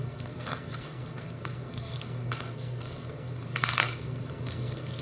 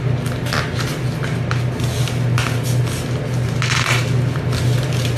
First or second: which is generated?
first